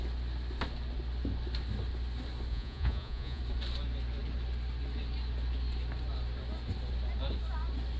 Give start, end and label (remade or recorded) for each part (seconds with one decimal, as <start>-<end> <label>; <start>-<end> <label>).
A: 0.0-2.5 recorded; 2.5-3.4 remade; 3.4-8.0 recorded